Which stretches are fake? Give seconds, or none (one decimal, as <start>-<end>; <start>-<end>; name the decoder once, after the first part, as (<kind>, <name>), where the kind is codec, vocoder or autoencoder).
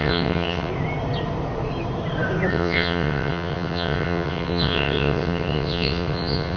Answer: 0.0-0.7 (vocoder, WaveNeXt); 2.5-6.6